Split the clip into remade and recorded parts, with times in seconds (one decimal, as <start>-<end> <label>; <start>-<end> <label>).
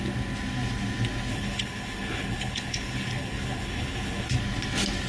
0.0-1.3 recorded; 1.3-4.4 remade; 4.4-5.1 recorded